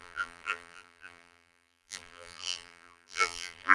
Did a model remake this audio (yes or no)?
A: yes